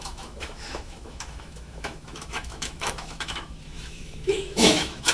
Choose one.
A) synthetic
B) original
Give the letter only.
A